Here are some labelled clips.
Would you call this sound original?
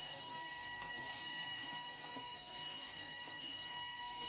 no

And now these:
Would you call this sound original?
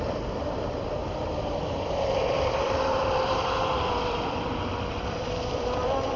no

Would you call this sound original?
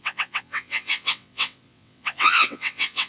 no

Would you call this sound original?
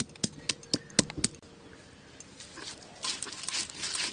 yes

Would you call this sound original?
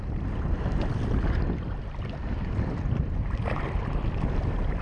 yes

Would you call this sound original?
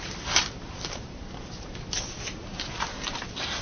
no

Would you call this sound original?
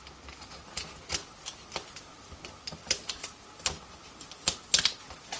yes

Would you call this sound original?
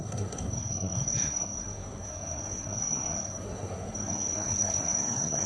no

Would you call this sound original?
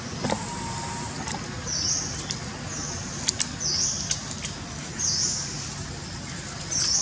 yes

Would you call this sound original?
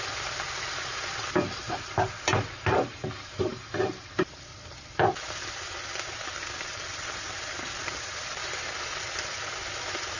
no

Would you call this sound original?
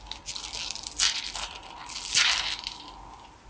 yes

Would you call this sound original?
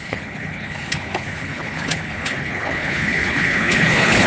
no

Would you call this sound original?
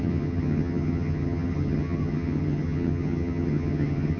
no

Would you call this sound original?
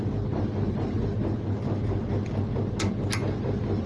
yes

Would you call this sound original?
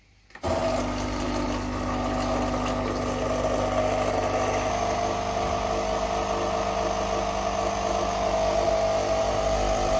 yes